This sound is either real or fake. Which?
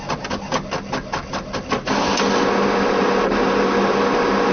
real